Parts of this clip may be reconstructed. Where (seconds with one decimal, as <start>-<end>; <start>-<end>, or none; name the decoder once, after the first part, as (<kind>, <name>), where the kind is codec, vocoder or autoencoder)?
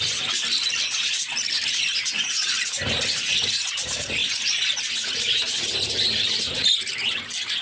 none